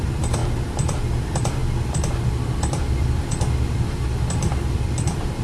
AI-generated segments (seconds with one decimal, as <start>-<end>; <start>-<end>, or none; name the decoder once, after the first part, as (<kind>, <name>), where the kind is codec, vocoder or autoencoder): 0.0-1.6 (vocoder, BigVGAN v2); 2.3-5.4